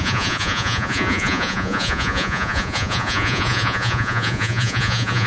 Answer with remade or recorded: remade